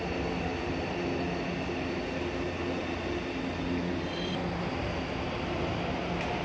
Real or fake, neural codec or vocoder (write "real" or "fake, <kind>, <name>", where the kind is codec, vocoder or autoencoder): real